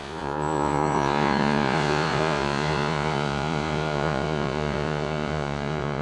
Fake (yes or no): yes